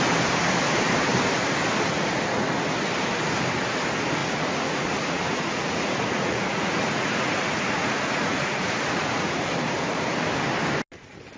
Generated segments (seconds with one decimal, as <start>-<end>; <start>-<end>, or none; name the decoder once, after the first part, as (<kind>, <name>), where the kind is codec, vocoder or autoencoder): 4.2-9.4 (vocoder, Vocos)